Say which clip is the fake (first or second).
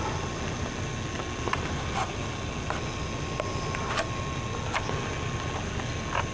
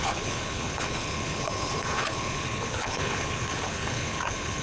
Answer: second